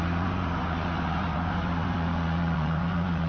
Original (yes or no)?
no